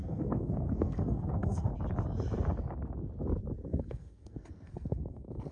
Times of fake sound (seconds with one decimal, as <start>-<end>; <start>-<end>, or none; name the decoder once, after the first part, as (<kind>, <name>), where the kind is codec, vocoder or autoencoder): 0.0-1.7 (codec, SNAC); 3.7-5.5